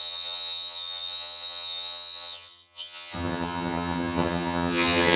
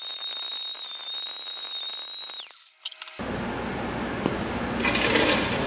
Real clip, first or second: second